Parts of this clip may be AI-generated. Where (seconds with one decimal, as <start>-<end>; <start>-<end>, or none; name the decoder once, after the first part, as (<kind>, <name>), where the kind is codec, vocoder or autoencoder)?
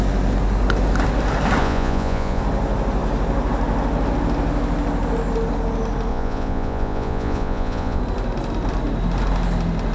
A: 1.6-2.4 (vocoder, Vocos); 6.1-8.0